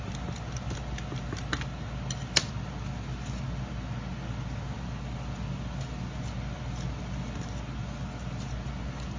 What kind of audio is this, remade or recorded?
recorded